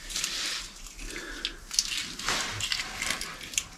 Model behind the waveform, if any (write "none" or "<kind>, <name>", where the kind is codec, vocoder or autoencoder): none